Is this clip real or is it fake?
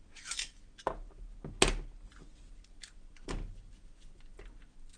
real